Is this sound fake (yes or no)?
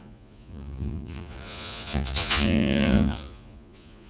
yes